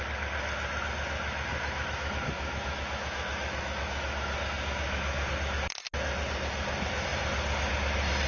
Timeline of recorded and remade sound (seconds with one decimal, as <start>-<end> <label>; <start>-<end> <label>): 0.0-1.5 recorded; 1.5-5.3 remade; 5.3-8.3 recorded

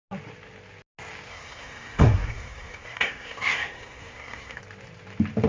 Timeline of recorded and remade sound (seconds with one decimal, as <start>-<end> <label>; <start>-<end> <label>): 0.0-1.3 recorded; 1.3-4.6 remade; 4.6-5.5 recorded

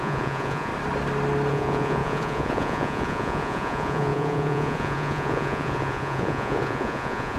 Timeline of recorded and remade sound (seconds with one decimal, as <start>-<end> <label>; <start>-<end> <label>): 0.0-0.7 remade; 0.7-1.5 recorded; 1.5-7.4 remade

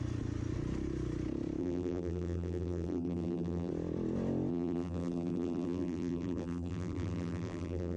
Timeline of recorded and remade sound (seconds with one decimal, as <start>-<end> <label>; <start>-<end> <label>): 0.0-1.6 recorded; 1.6-3.7 remade; 3.7-4.5 recorded; 4.5-8.0 remade

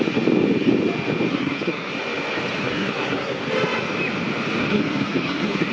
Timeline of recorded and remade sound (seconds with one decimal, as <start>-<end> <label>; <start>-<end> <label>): 0.0-1.3 recorded; 1.3-1.9 remade; 1.9-2.6 recorded; 2.6-3.4 remade; 3.4-4.6 recorded; 4.6-5.7 remade

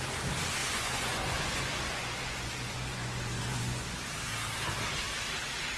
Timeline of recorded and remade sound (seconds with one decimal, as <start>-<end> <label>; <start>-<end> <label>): 0.0-0.6 recorded; 0.6-4.1 remade; 4.1-5.8 recorded